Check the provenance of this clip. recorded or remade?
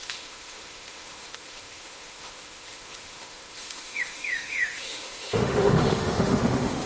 remade